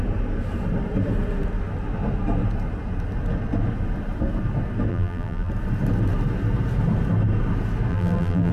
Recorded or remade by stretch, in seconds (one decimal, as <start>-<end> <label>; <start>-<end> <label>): 0.0-4.9 recorded; 4.9-5.5 remade; 5.5-7.9 recorded; 7.9-8.5 remade